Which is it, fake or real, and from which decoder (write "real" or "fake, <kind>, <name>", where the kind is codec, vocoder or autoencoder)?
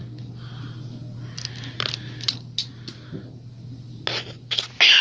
real